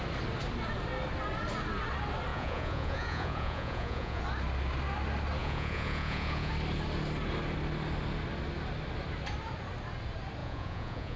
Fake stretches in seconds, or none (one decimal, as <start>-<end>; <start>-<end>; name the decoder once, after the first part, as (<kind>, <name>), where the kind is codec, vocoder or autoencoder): 2.3-4.2 (vocoder, Vocos); 5.4-6.5; 10.4-11.2